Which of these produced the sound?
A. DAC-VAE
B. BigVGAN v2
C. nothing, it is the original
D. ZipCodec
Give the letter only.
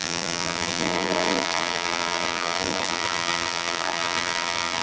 B